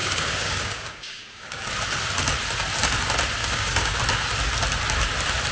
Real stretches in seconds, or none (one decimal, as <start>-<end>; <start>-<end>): 1.7-3.4; 4.0-5.5